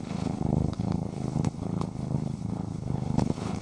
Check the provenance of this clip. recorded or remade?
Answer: remade